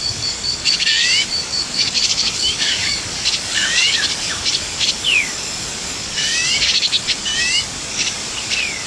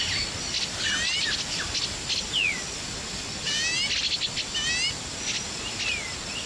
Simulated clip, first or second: first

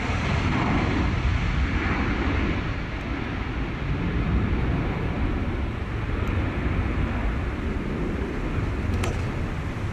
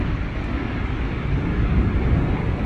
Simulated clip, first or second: second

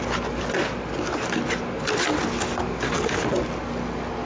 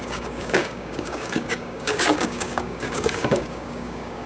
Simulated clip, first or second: second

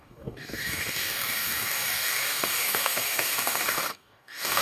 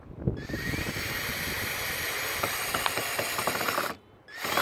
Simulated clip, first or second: first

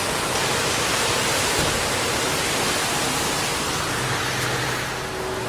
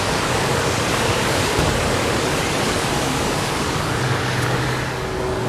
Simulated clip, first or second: second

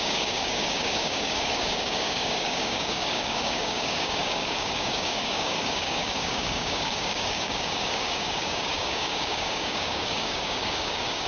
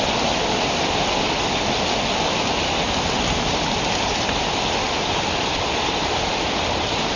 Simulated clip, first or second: first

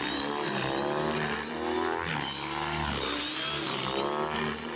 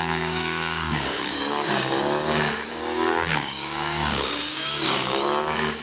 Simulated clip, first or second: second